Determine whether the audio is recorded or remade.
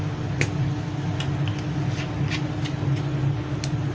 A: recorded